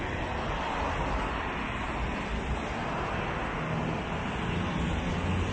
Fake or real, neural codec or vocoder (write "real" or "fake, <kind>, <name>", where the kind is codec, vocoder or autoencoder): real